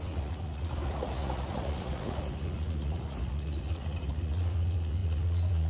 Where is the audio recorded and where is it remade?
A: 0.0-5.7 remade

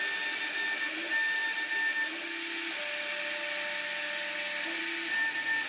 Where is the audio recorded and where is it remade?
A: 0.0-5.7 recorded

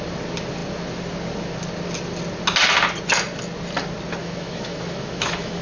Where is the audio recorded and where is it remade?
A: 0.0-4.2 recorded; 4.2-5.6 remade

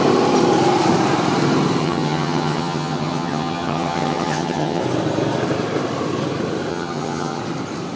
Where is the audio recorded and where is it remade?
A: 0.0-1.8 recorded; 1.8-4.8 remade; 4.8-6.7 recorded; 6.7-7.4 remade; 7.4-8.0 recorded

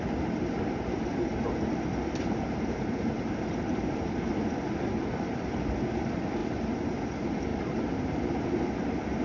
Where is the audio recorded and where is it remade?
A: 0.0-1.3 recorded; 1.3-4.3 remade; 4.3-7.5 recorded; 7.5-8.5 remade; 8.5-9.2 recorded